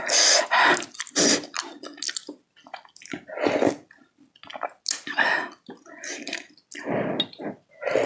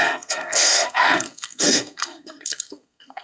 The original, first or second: first